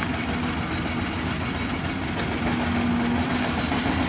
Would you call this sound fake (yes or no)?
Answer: no